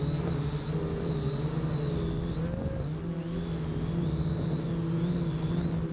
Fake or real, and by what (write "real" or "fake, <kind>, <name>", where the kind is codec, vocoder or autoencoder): real